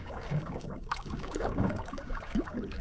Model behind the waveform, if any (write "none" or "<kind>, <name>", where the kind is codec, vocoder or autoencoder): codec, DAC